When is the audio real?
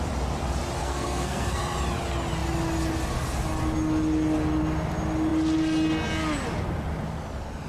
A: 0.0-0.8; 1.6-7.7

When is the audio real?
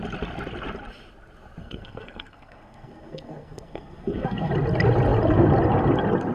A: 0.0-1.6; 4.5-6.3